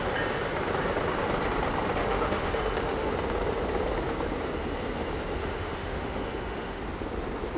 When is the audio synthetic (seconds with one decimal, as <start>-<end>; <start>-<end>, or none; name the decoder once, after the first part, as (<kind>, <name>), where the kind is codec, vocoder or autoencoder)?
2.0-3.1 (autoencoder, DAC-VAE); 5.4-6.8